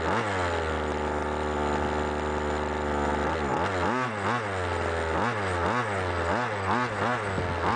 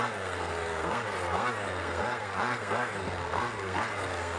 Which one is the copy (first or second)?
second